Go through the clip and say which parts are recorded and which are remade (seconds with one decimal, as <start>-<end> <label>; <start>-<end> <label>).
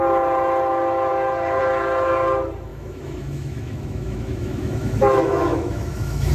0.0-2.7 recorded; 2.7-6.3 remade